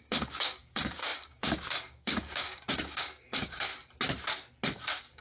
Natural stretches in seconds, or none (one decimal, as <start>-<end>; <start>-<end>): 3.7-4.7